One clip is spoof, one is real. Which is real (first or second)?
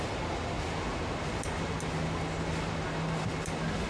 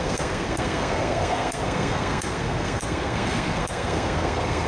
first